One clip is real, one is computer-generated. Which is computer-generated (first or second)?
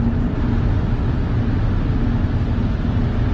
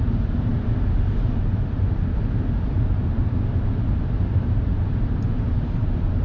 second